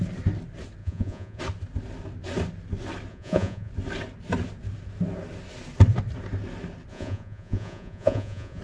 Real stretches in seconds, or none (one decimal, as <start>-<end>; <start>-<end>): 0.0-0.8; 1.4-3.1; 3.7-6.9